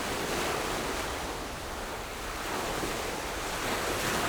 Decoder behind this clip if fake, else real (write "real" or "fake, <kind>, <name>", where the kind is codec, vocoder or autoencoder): real